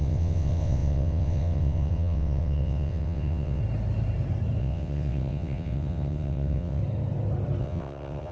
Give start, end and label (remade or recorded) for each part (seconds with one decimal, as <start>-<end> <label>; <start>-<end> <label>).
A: 0.0-3.6 remade; 3.6-4.6 recorded; 4.6-6.8 remade; 6.8-7.6 recorded; 7.6-8.3 remade